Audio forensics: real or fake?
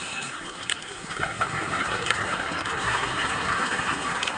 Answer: fake